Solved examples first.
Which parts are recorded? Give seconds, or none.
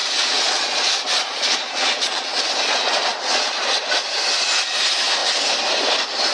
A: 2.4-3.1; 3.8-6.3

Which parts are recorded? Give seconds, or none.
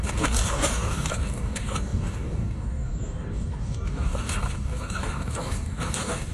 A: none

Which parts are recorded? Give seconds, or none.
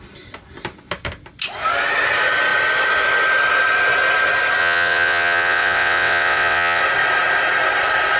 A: 0.0-4.6; 6.8-8.2